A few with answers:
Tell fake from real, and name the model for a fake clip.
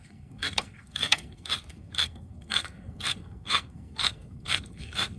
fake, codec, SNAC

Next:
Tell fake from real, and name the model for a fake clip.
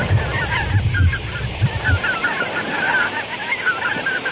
real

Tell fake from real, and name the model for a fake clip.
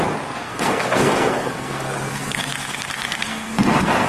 fake, codec, SNAC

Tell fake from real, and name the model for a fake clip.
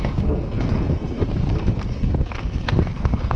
fake, codec, SNAC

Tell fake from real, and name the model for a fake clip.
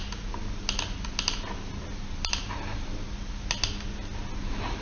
real